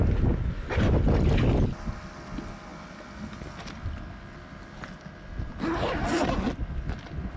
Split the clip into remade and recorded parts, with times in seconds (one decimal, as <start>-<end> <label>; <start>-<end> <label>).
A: 0.0-7.4 recorded